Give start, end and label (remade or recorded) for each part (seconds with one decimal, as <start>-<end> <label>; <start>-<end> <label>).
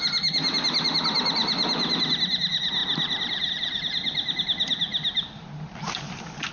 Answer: 0.0-6.5 recorded